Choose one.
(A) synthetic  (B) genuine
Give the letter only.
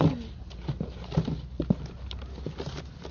B